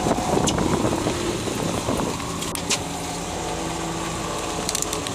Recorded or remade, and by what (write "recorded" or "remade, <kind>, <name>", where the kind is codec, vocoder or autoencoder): recorded